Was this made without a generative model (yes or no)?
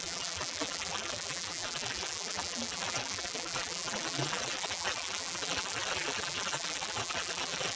no